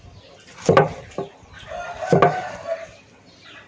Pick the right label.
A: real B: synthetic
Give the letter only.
A